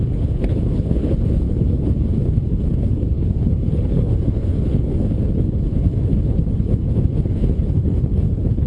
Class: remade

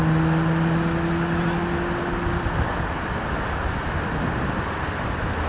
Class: recorded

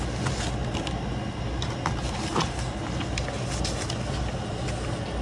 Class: recorded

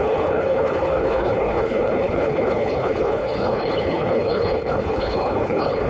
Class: remade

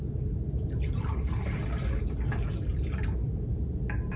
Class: recorded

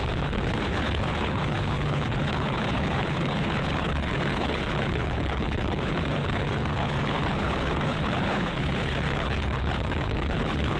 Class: remade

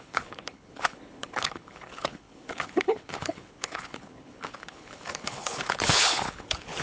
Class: remade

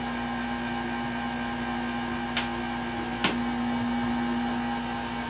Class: recorded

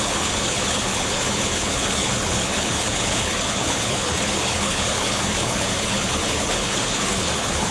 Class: remade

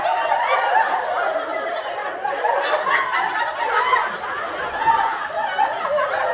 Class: recorded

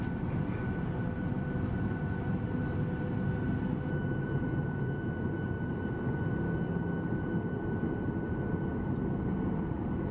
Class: recorded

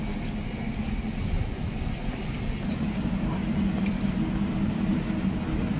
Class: recorded